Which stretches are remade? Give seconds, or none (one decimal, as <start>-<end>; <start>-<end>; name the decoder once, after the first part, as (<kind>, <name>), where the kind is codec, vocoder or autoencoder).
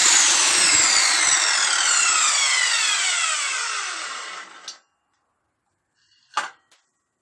none